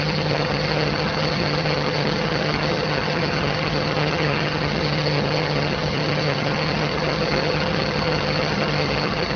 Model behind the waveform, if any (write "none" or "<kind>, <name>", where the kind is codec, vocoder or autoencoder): vocoder, HiFi-GAN